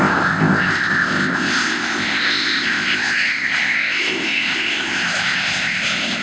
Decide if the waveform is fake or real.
fake